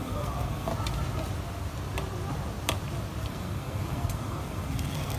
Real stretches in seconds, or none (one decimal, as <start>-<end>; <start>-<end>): 0.7-3.2